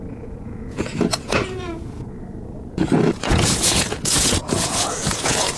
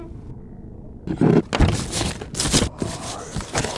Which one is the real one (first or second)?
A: second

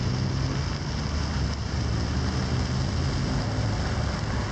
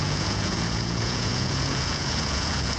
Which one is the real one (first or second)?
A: first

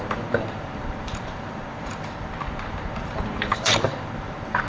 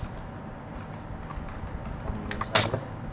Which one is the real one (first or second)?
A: second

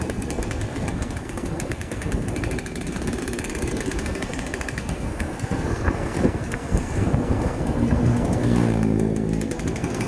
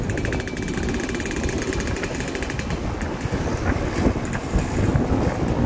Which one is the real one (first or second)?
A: second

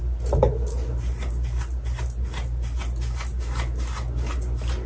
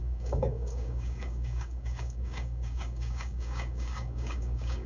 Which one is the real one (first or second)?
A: first